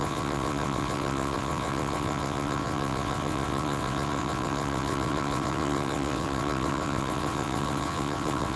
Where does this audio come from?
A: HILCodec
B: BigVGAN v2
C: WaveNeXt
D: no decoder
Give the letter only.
C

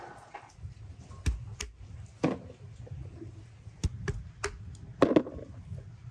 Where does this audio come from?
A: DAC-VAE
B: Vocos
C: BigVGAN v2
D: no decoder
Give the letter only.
D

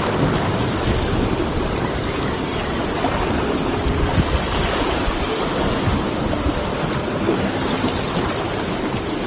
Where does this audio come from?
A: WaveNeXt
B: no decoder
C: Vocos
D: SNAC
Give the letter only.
B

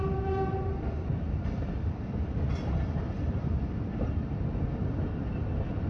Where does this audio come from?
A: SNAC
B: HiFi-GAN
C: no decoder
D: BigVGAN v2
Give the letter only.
C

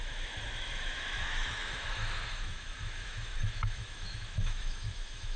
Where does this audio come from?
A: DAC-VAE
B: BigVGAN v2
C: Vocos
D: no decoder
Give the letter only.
A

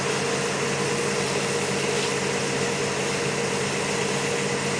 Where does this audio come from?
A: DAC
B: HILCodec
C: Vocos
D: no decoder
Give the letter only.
D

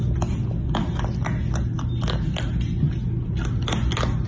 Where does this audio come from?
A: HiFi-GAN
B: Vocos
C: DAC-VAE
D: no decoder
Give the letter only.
D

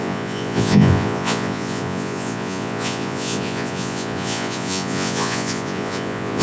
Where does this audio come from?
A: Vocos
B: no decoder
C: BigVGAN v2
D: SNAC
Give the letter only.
A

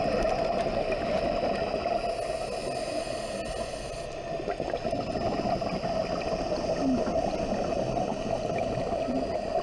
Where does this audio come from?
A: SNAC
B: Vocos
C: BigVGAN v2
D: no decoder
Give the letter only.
D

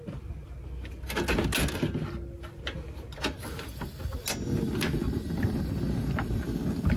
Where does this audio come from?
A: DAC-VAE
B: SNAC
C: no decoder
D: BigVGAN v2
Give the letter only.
C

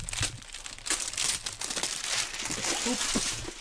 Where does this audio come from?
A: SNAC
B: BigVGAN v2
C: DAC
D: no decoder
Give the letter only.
D